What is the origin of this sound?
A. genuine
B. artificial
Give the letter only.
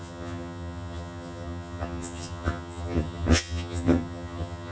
B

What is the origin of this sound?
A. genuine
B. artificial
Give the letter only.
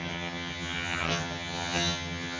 B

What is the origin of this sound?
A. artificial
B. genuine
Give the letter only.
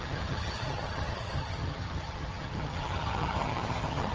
A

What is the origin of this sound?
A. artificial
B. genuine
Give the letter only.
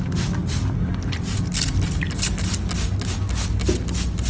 B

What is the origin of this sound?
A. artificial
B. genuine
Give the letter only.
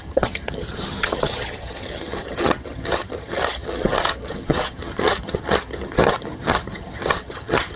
A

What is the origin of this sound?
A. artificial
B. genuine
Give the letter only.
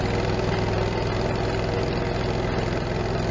B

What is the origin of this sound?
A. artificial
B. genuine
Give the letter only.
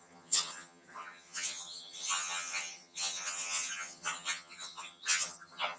A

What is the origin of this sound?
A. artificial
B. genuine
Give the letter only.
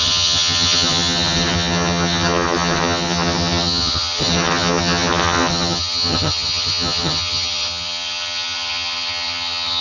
A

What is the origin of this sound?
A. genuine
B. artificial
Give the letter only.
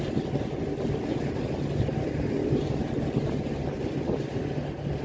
A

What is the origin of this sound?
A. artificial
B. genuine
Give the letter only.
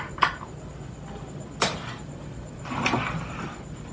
B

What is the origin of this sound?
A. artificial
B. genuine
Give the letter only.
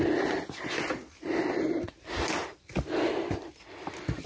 B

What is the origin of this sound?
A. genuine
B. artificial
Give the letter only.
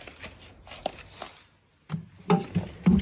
A